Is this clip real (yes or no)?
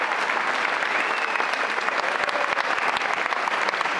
yes